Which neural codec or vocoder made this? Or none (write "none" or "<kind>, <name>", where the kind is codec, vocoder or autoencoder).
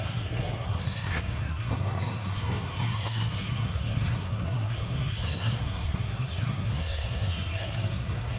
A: codec, SNAC